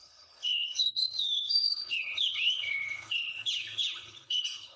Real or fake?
fake